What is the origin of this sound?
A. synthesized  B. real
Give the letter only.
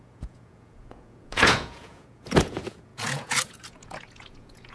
A